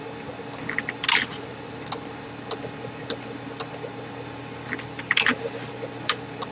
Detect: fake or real real